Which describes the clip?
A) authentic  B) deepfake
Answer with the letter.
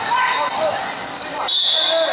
A